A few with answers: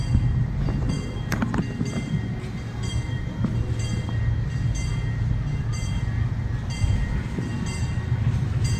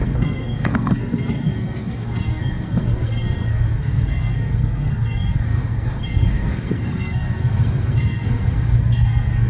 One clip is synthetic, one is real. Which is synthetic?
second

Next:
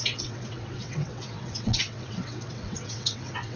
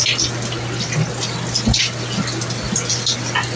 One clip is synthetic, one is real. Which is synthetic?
first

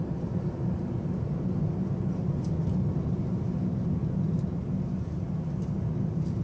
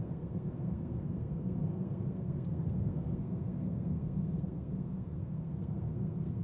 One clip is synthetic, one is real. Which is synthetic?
second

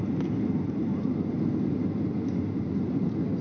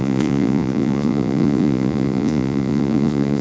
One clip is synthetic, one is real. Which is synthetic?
second